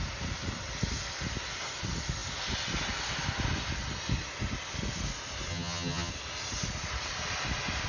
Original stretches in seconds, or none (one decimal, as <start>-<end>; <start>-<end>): 0.0-5.5; 6.1-7.9